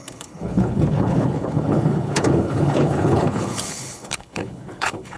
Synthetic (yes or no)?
yes